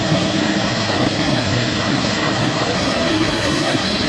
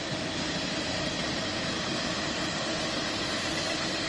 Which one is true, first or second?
second